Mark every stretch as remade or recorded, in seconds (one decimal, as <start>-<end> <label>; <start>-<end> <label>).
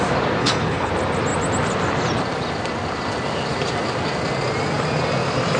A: 0.0-0.4 recorded; 0.4-0.9 remade; 0.9-5.6 recorded